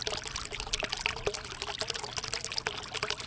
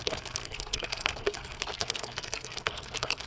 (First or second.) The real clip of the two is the first